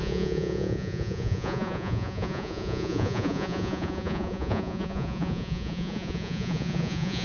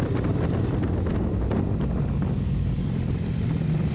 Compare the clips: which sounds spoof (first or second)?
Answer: first